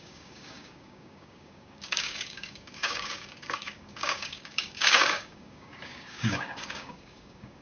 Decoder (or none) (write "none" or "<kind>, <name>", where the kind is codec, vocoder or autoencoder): codec, DAC